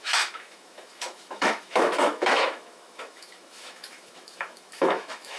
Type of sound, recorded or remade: remade